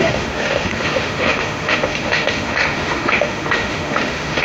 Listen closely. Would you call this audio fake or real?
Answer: fake